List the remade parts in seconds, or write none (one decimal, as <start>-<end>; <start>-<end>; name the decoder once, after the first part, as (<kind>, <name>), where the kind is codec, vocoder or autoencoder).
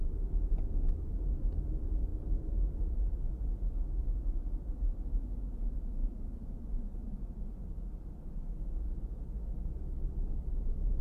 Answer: 6.0-7.4 (vocoder, BigVGAN v2)